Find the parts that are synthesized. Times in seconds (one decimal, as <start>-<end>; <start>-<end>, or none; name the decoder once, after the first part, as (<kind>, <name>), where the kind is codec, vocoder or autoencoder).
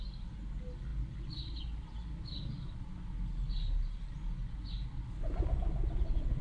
none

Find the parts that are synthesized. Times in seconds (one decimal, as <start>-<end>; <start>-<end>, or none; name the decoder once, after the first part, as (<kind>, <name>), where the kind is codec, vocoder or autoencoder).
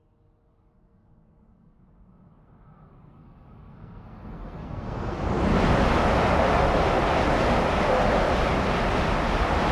0.5-5.2 (codec, SNAC)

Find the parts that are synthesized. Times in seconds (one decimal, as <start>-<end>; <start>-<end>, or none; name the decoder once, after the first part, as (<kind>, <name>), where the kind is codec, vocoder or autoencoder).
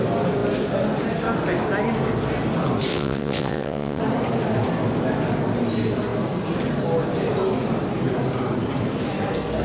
2.9-4.0 (vocoder, WaveNeXt)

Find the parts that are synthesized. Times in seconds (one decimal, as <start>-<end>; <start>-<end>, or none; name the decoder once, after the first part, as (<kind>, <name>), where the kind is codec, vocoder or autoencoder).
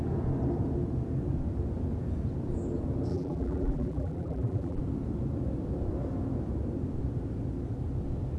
3.1-4.8 (vocoder, BigVGAN v2)